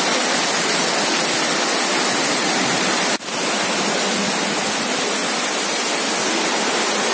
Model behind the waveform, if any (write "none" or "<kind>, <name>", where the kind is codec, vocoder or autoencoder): none